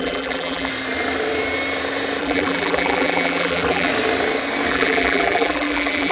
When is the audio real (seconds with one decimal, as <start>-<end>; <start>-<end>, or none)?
0.7-2.2; 3.9-4.7